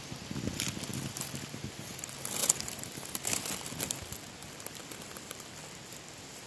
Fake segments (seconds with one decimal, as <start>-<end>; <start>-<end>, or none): 0.9-1.5; 4.4-5.3